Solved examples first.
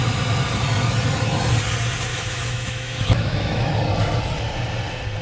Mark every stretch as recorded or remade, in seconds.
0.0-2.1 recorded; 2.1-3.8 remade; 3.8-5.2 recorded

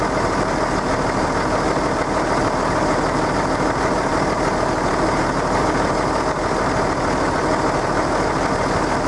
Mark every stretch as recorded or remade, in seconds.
0.0-9.1 recorded